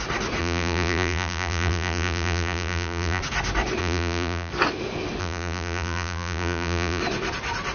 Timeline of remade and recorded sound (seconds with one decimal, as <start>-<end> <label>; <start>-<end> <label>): 0.0-0.4 recorded; 0.4-3.2 remade; 3.2-3.8 recorded; 3.8-4.5 remade; 4.5-5.2 recorded; 5.2-7.0 remade; 7.0-7.7 recorded